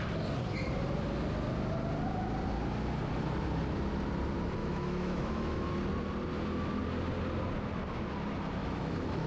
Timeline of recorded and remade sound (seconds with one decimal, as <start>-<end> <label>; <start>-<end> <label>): 0.0-4.6 recorded; 4.6-5.7 remade; 5.7-8.6 recorded; 8.6-9.3 remade